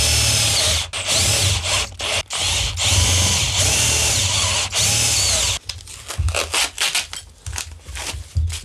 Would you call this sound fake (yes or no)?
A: no